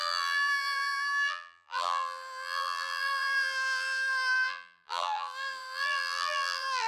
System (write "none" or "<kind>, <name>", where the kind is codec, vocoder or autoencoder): vocoder, BigVGAN v2